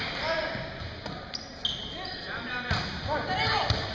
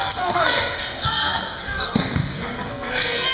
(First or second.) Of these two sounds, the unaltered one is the first